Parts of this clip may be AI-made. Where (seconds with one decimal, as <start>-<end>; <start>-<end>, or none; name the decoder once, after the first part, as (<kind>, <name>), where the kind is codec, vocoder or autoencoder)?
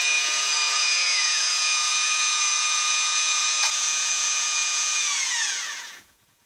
0.0-6.5 (vocoder, Vocos)